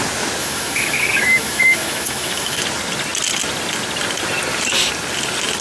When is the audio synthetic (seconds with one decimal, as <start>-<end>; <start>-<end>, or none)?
0.4-2.6